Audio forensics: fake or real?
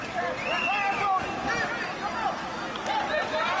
real